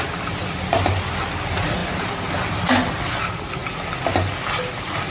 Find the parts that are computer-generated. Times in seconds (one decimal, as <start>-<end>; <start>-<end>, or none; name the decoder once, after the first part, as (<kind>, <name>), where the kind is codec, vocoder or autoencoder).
none